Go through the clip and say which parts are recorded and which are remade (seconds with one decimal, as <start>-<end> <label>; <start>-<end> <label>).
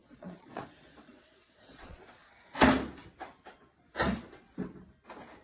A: 0.0-2.4 remade; 2.4-5.4 recorded